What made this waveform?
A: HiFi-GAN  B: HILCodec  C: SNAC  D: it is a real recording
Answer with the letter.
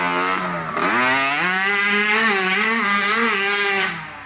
D